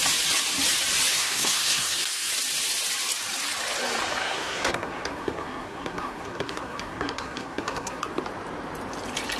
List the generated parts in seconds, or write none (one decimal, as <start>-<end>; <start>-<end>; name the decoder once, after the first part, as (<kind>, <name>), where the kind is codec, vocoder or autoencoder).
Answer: 1.1-2.3 (codec, SNAC); 4.2-8.0